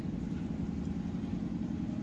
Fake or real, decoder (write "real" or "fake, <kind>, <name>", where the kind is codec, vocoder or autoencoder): real